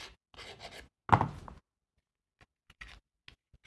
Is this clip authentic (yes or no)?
yes